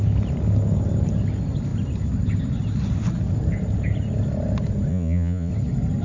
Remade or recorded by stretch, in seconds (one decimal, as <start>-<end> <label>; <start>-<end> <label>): 0.0-4.9 recorded; 4.9-5.5 remade; 5.5-6.0 recorded